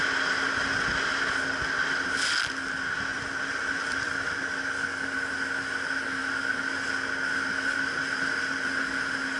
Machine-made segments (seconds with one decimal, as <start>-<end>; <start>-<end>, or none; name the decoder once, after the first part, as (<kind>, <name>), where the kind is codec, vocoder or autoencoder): 3.1-4.4 (vocoder, BigVGAN v2)